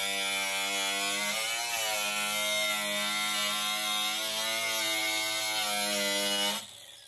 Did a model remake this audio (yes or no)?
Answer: no